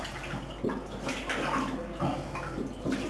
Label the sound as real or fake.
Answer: real